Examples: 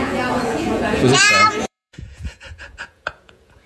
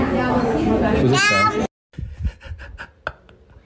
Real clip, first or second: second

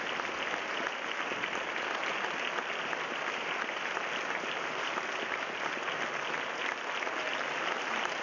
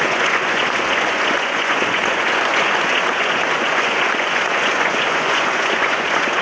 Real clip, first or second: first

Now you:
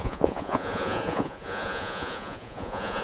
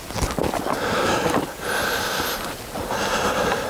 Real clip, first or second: second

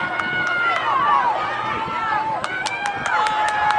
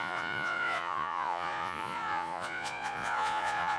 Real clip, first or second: first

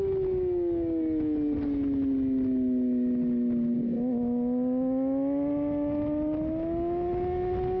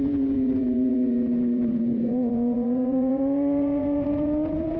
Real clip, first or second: first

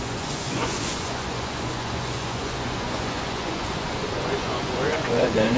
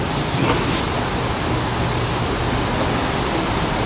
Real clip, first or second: second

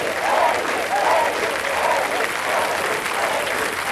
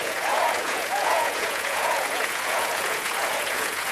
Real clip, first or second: first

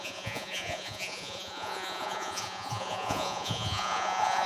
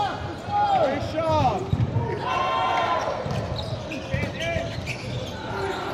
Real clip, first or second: second